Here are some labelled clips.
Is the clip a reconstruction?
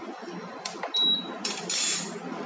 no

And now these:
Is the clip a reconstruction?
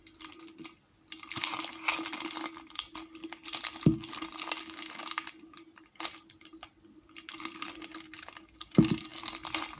no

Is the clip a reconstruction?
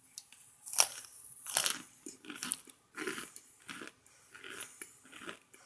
no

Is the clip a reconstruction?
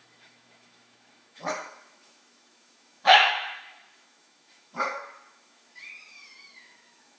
yes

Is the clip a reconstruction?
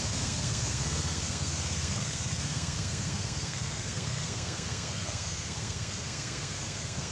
yes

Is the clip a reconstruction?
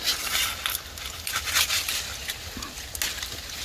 no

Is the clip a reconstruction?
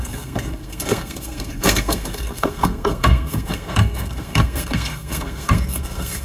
yes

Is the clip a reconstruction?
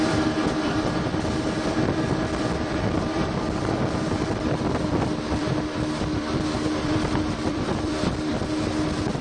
yes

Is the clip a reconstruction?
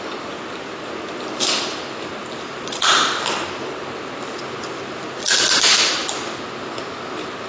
no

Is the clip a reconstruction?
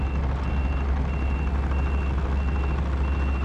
no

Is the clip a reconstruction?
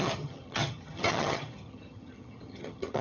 yes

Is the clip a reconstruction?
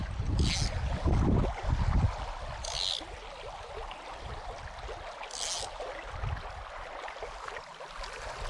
no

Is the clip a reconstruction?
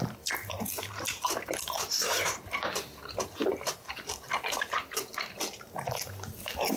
yes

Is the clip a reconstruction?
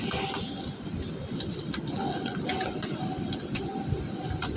no